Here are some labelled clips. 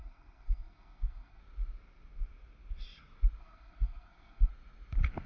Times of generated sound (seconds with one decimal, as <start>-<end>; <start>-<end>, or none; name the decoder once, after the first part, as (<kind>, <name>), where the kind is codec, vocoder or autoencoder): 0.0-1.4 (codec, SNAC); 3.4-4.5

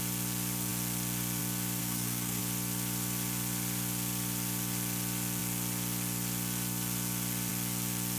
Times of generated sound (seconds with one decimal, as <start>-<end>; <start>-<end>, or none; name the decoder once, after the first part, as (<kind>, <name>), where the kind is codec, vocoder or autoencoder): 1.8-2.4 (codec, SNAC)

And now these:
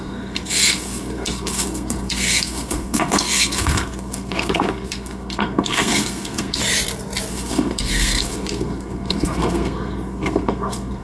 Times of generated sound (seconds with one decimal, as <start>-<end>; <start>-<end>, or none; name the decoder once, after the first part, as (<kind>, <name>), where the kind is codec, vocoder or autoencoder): 0.0-6.6 (codec, SNAC); 7.3-11.0

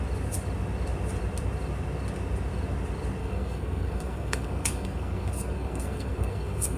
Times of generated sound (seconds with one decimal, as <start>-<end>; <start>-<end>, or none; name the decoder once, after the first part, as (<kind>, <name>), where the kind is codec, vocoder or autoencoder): 3.2-6.8 (codec, SNAC)